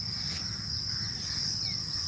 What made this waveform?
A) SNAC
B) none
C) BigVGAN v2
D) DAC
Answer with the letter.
B